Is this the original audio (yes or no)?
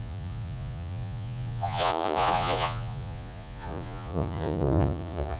no